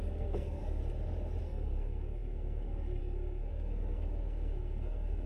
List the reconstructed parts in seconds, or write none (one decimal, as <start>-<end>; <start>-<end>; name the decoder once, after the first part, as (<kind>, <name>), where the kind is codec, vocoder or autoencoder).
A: 0.0-0.8 (codec, SNAC); 1.4-5.3